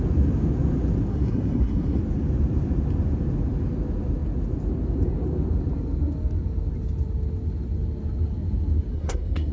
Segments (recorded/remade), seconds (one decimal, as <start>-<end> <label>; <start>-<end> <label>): 0.0-1.1 recorded; 1.1-2.0 remade; 2.0-8.9 recorded; 8.9-9.5 remade